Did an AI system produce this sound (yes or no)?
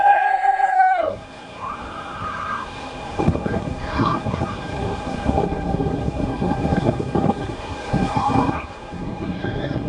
yes